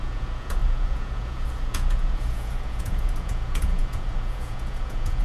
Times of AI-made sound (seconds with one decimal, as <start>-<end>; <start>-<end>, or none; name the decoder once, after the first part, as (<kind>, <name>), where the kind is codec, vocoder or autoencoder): 0.0-5.2 (vocoder, Vocos)